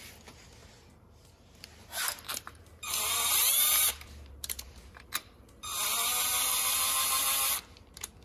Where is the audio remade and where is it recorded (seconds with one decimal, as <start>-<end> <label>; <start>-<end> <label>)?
0.0-0.6 recorded; 0.6-5.5 remade; 5.5-8.2 recorded